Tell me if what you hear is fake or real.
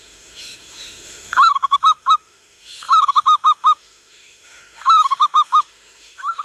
fake